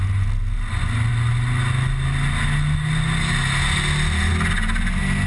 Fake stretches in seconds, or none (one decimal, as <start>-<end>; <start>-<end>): none